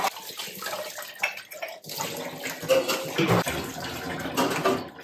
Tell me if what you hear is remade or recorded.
recorded